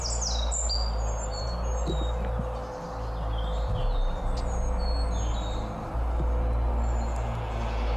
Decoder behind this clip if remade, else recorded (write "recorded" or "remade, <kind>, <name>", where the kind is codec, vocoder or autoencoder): recorded